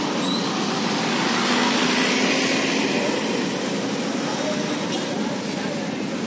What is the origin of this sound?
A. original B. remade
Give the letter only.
A